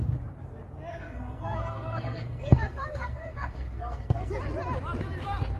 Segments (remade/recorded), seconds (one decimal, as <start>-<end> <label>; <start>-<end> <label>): 0.0-0.9 recorded; 0.9-4.3 remade; 4.3-5.6 recorded